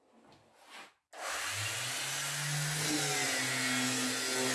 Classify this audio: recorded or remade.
recorded